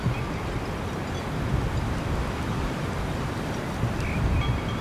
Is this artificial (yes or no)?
no